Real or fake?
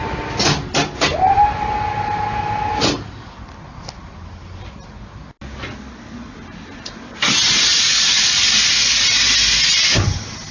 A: real